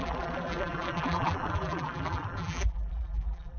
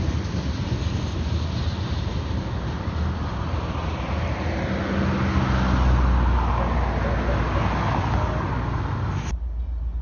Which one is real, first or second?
second